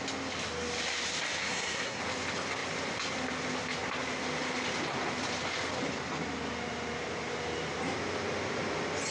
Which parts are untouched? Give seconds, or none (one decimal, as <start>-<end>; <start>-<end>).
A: 0.0-1.4; 2.0-9.1